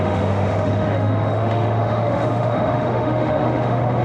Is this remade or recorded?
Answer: remade